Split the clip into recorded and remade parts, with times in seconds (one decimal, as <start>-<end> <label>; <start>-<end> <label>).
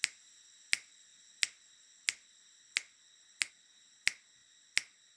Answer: 0.0-5.2 recorded